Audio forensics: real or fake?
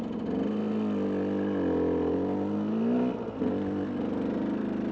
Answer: real